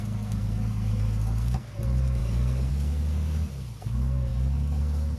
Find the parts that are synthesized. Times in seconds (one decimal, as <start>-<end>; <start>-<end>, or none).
0.0-5.2